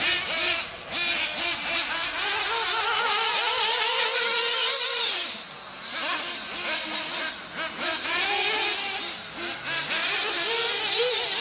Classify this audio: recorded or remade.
recorded